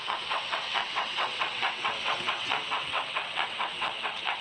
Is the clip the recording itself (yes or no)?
no